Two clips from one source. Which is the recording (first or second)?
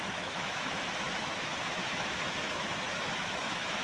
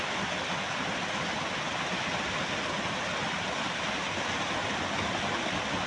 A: second